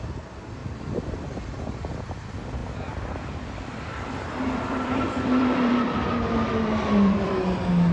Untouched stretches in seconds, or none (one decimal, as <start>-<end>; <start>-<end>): 0.0-0.6; 1.9-2.6; 7.3-7.9